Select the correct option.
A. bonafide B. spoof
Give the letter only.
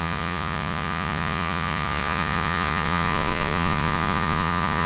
B